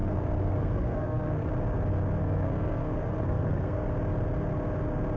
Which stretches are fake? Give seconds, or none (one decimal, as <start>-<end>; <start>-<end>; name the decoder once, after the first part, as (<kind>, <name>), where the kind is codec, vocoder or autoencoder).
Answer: 0.0-1.5 (codec, SNAC); 2.2-3.9